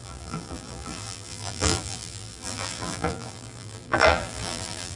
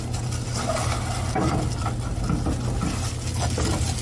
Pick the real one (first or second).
second